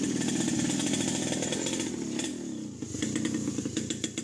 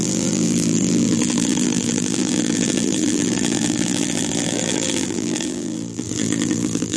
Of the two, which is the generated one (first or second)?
second